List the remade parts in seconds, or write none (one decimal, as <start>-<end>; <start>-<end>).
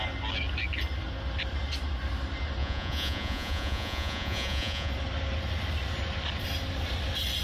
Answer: 2.6-4.9